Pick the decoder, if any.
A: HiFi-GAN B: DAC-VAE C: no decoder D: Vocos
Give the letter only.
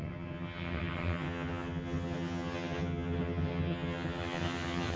A